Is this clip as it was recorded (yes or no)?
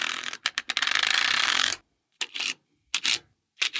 yes